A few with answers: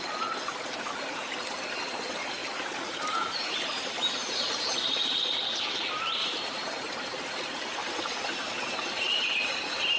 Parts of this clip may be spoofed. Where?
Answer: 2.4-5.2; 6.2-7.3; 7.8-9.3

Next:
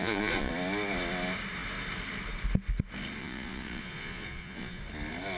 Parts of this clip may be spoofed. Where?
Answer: 0.0-0.5; 3.2-4.8

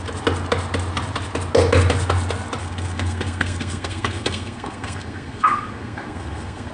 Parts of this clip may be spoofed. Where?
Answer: 2.6-6.7

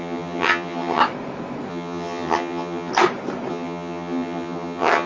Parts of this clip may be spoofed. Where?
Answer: 0.0-1.0; 1.7-2.9; 3.5-5.1